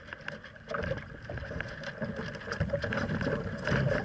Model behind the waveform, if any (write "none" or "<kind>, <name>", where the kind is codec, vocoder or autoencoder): none